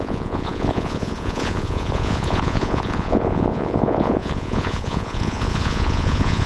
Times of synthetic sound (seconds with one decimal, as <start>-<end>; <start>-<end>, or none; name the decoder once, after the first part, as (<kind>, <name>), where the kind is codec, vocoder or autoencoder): 0.0-6.5 (vocoder, Vocos)